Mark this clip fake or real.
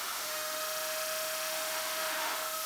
fake